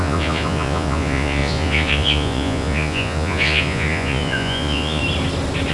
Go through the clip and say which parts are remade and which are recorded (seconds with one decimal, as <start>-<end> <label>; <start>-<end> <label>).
0.0-5.0 remade; 5.0-5.7 recorded